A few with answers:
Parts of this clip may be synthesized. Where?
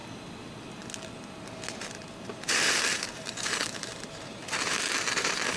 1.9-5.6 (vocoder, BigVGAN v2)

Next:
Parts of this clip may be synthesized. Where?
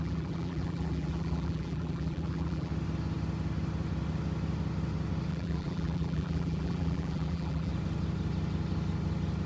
0.0-2.7 (vocoder, BigVGAN v2); 5.3-7.7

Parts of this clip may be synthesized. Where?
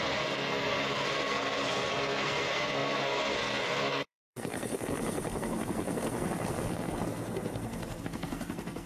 0.0-8.9 (codec, SNAC)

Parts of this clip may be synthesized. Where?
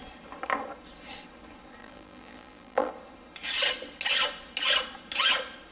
1.8-2.9 (vocoder, BigVGAN v2)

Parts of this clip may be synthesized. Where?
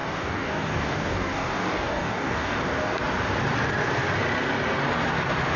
0.0-3.0 (codec, DAC)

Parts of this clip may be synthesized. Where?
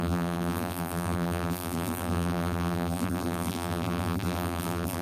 0.0-5.0 (vocoder, BigVGAN v2)